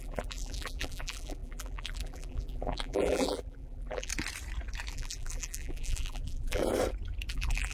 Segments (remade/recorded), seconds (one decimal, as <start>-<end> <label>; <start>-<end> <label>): 0.0-4.1 remade; 4.1-4.9 recorded; 4.9-6.6 remade; 6.6-7.3 recorded; 7.3-7.7 remade